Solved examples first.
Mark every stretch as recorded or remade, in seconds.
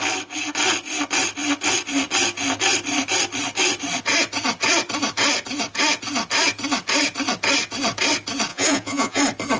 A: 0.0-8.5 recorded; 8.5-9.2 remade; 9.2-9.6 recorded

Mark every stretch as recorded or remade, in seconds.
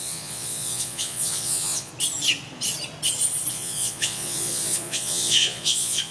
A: 0.0-1.9 remade; 1.9-3.5 recorded; 3.5-6.1 remade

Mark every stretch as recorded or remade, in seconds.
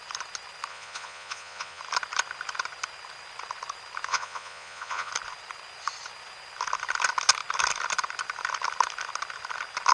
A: 0.0-0.7 recorded; 0.7-1.8 remade; 1.8-4.1 recorded; 4.1-5.1 remade; 5.1-9.9 recorded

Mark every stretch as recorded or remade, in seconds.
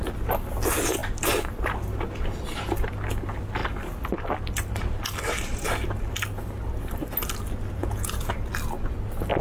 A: 0.0-7.8 recorded; 7.8-8.3 remade; 8.3-9.4 recorded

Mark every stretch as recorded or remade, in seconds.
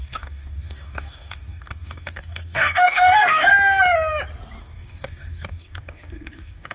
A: 0.0-3.5 remade; 3.5-4.6 recorded; 4.6-6.7 remade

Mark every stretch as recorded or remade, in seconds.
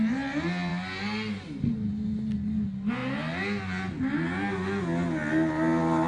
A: 0.0-6.1 recorded